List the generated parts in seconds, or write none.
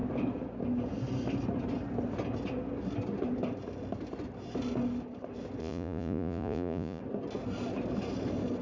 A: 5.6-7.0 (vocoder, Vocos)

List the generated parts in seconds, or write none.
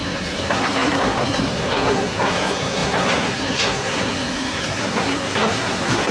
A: 0.0-6.1 (codec, SNAC)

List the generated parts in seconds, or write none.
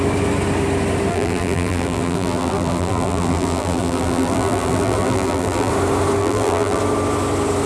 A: 1.1-5.7 (vocoder, BigVGAN v2); 6.2-6.8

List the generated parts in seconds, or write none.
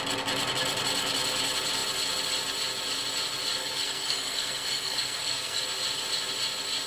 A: 3.6-5.6 (codec, SNAC)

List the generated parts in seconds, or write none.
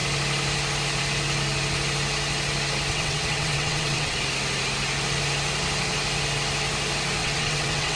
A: 2.9-4.2 (vocoder, WaveNeXt); 7.2-8.0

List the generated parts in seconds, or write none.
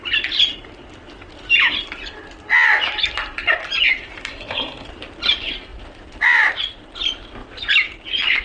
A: none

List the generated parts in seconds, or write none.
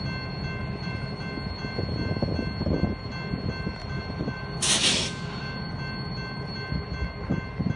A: 0.6-1.1 (vocoder, BigVGAN v2); 3.8-4.6